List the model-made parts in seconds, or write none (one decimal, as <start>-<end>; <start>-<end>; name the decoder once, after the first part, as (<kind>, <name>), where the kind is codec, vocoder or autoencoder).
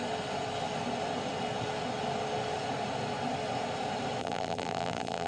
4.2-5.3 (vocoder, BigVGAN v2)